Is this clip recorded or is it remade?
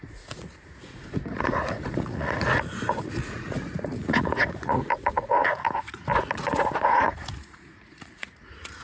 remade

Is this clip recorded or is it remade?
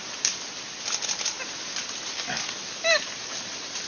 recorded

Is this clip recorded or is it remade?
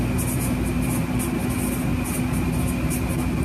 recorded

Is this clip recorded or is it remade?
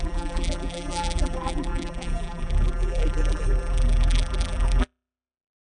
remade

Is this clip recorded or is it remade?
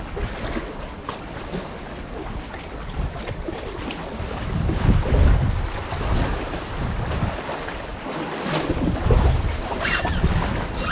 recorded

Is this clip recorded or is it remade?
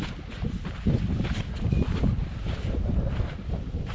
recorded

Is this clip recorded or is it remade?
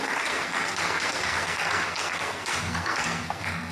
remade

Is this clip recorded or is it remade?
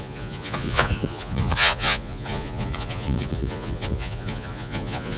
remade